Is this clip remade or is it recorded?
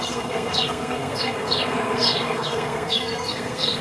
remade